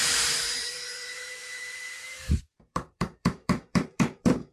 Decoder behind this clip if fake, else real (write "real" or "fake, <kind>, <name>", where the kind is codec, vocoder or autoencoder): fake, vocoder, BigVGAN v2